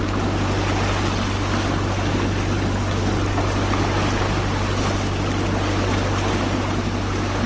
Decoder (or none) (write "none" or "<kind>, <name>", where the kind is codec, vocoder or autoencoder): none